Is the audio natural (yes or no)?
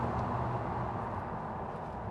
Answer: yes